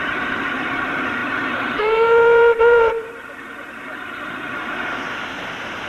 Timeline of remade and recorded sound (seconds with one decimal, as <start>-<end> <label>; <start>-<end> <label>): 0.0-3.9 remade; 3.9-4.4 recorded; 4.4-5.9 remade